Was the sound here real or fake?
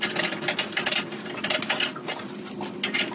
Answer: real